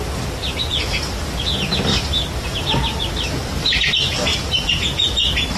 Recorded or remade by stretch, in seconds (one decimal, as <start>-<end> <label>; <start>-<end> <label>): 0.0-1.9 recorded; 1.9-3.7 remade; 3.7-4.3 recorded; 4.3-4.8 remade; 4.8-5.6 recorded